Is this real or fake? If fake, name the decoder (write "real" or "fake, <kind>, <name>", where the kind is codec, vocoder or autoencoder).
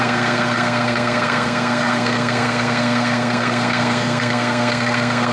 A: fake, codec, SNAC